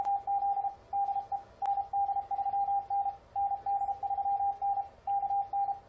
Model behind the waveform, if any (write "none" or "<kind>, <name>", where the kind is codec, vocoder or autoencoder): none